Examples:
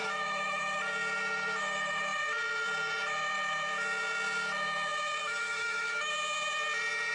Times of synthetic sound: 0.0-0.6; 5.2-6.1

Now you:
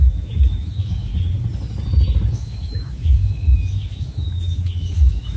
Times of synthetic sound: 0.0-1.1; 2.3-5.4